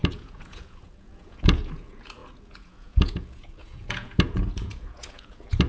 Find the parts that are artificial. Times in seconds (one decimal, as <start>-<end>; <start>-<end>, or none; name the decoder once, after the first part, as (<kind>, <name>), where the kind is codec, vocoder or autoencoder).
0.0-5.7 (vocoder, Vocos)